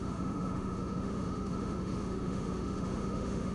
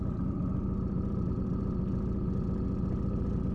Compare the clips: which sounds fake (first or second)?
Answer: first